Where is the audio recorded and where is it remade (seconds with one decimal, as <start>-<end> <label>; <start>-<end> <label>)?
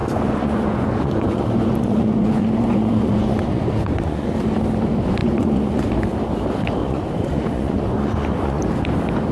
0.0-4.3 remade; 4.3-5.2 recorded; 5.2-5.9 remade; 5.9-6.8 recorded; 6.8-8.6 remade; 8.6-9.3 recorded